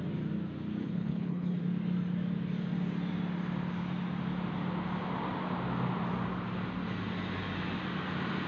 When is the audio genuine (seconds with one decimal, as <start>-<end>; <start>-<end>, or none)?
0.0-0.8; 1.6-8.5